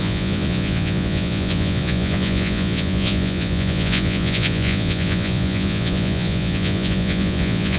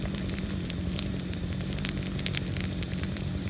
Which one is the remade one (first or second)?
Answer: first